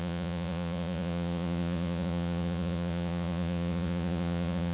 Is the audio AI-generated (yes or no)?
yes